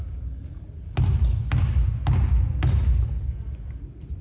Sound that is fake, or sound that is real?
real